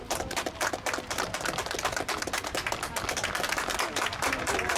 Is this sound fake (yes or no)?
no